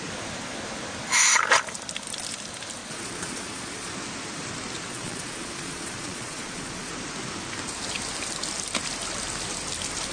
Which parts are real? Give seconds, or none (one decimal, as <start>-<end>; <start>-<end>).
0.0-2.8; 3.9-4.9; 6.9-10.1